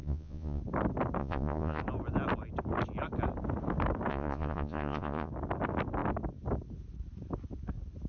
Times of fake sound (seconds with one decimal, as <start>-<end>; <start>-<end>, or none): 0.0-0.6; 1.2-1.8; 4.1-5.3